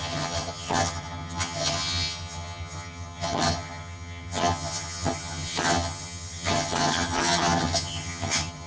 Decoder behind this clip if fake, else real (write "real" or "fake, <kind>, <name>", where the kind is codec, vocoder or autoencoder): fake, vocoder, HiFi-GAN